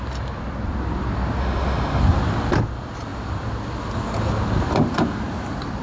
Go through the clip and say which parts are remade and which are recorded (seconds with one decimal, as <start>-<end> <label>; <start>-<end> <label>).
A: 0.0-1.4 recorded; 1.4-2.0 remade; 2.0-5.8 recorded